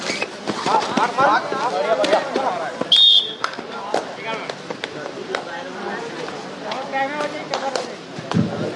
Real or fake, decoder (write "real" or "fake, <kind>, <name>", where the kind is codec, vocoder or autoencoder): real